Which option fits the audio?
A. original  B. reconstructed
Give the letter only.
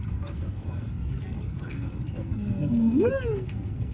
B